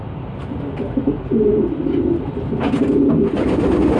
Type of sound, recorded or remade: recorded